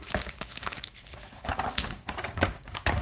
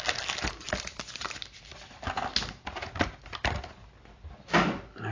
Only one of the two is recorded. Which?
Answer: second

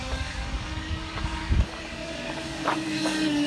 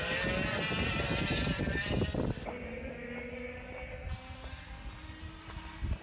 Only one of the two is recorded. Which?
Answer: second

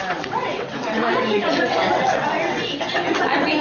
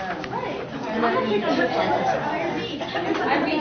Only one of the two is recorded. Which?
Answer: second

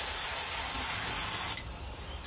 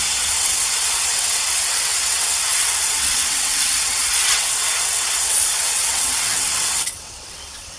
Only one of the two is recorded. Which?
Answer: first